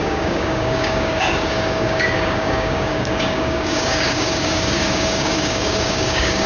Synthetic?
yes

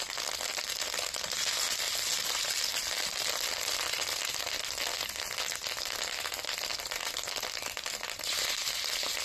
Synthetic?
no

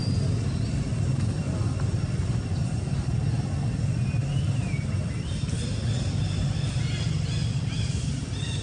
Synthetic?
no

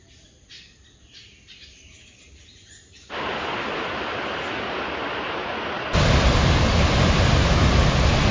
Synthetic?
no